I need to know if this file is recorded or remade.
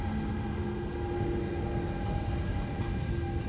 recorded